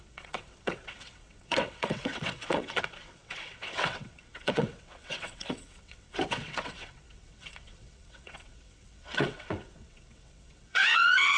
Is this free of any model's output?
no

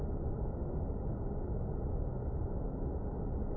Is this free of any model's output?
yes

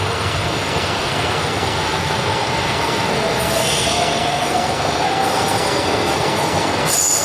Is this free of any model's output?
no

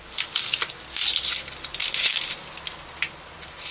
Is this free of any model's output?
yes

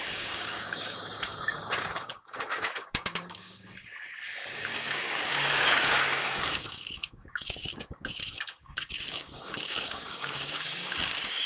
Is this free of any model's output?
no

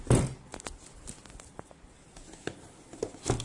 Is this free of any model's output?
yes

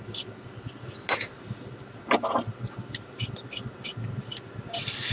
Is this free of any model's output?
yes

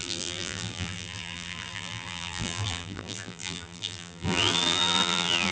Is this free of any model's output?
no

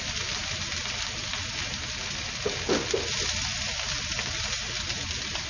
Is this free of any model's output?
yes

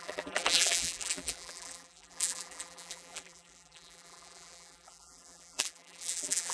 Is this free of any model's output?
no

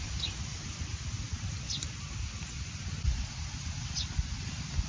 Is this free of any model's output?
yes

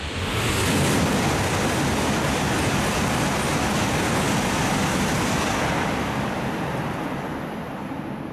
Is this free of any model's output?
yes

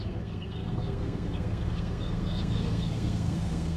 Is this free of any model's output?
no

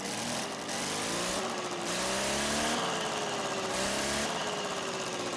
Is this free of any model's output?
yes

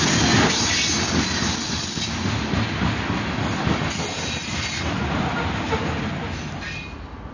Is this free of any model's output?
yes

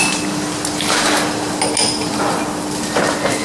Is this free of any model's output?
yes